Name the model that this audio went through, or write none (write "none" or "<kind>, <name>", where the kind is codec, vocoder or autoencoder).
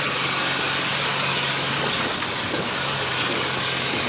codec, DAC